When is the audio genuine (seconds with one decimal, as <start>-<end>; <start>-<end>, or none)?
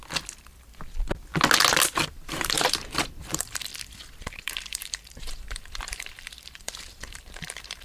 0.0-2.0; 3.7-4.3